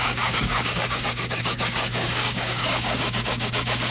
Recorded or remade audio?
remade